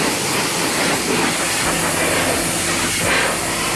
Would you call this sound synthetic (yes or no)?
no